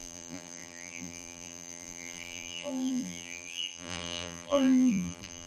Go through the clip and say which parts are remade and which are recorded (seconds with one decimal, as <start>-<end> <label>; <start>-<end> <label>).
0.0-5.5 remade